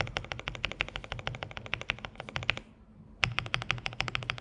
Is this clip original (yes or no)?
yes